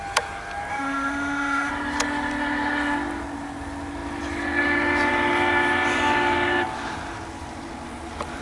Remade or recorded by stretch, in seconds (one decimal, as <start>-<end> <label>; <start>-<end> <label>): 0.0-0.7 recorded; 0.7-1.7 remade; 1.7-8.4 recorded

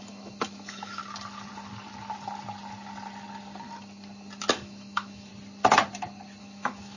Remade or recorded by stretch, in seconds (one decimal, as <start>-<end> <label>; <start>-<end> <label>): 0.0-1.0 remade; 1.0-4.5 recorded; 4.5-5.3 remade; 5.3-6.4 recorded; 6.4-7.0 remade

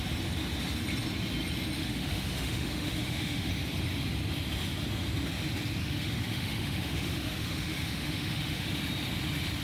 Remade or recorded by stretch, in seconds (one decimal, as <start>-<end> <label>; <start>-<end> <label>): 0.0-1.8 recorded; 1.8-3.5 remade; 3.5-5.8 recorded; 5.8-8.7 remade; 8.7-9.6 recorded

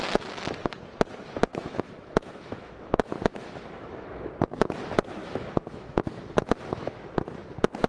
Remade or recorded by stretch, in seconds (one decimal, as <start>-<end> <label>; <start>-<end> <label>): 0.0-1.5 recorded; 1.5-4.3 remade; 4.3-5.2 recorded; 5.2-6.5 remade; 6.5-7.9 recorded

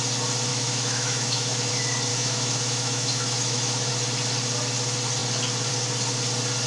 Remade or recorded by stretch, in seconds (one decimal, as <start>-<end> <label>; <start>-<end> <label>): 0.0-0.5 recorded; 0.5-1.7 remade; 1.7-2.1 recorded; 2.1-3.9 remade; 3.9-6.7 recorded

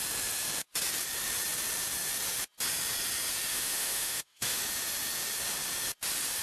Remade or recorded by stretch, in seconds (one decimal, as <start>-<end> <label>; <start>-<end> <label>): 0.0-3.5 recorded; 3.5-4.6 remade; 4.6-6.4 recorded